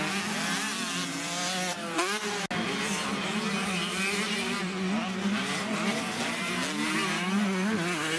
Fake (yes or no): no